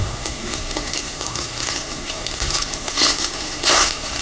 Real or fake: fake